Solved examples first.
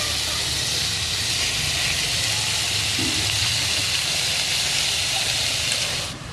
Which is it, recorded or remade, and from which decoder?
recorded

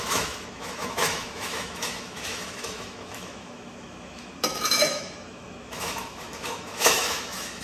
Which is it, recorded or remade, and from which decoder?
remade, autoencoder, DAC-VAE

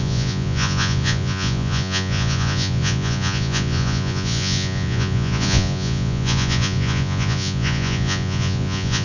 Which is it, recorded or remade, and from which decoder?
remade, vocoder, Vocos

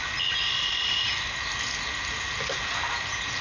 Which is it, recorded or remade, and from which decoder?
recorded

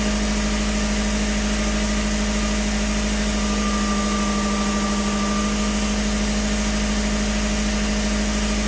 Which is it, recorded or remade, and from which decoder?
recorded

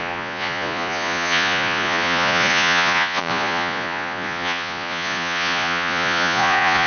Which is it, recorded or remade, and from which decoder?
remade, vocoder, Vocos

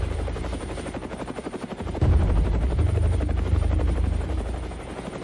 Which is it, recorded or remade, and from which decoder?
remade, vocoder, BigVGAN v2